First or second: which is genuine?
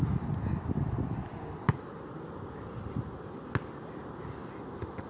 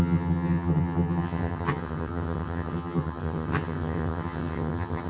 first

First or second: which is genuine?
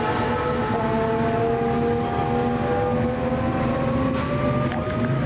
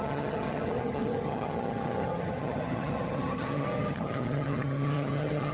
first